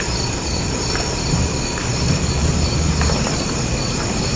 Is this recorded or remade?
remade